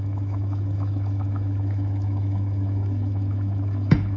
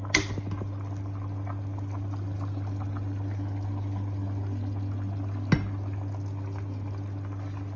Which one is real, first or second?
second